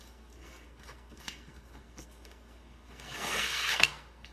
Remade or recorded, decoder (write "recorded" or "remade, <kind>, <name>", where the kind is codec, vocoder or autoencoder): remade, codec, SNAC